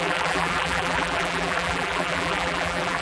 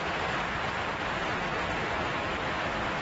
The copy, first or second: first